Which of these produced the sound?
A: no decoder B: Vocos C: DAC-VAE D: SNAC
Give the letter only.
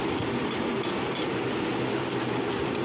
A